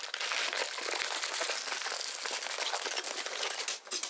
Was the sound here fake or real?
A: real